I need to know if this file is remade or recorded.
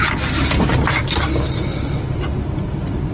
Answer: recorded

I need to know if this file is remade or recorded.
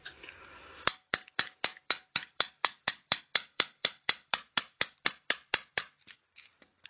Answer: remade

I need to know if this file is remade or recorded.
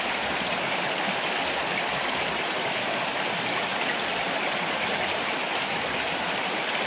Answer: recorded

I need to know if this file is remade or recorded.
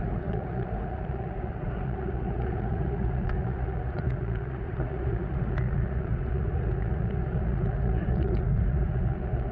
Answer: remade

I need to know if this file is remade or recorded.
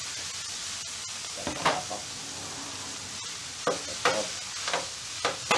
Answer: recorded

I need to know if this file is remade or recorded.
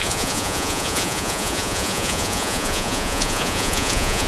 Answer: remade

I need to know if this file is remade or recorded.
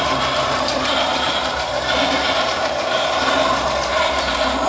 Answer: remade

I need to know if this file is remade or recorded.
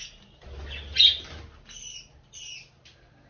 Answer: recorded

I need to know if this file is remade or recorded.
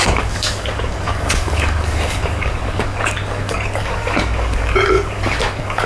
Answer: remade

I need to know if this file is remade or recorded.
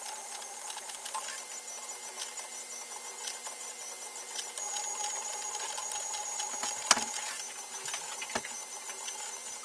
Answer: recorded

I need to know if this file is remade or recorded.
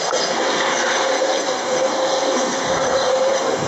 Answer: remade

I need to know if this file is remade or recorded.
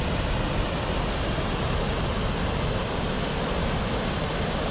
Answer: recorded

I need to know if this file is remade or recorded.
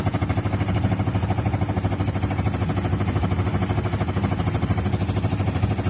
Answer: recorded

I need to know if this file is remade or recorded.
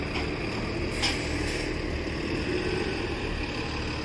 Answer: recorded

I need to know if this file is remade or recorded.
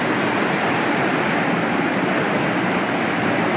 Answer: recorded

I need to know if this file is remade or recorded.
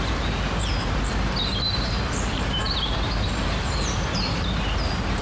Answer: remade